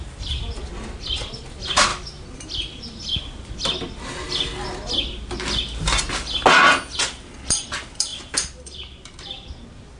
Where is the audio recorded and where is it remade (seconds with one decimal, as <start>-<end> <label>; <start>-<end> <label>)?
0.0-10.0 recorded